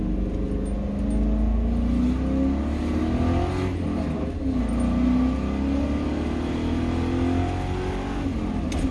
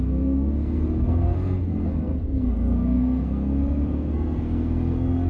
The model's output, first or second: second